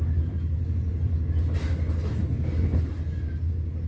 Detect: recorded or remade recorded